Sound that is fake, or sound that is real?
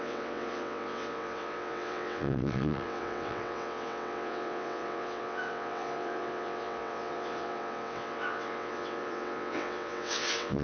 fake